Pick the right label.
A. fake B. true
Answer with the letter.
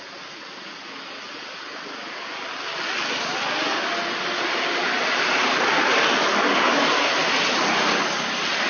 B